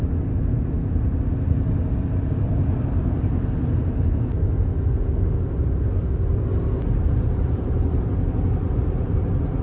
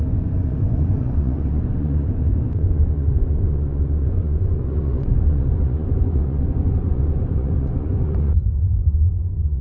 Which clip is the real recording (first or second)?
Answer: first